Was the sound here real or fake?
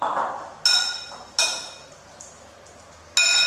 real